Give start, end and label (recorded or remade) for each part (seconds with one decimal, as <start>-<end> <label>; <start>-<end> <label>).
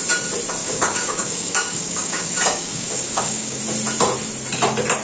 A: 0.0-0.6 recorded; 0.6-3.6 remade; 3.6-5.0 recorded